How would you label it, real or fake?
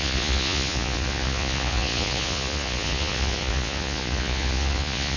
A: fake